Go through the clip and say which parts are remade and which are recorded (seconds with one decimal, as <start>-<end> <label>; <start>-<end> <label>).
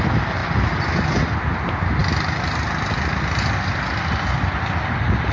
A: 0.0-5.3 recorded